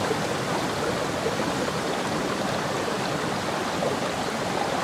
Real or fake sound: real